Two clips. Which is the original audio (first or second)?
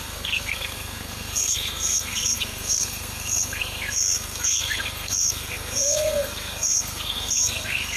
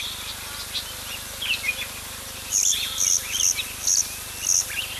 second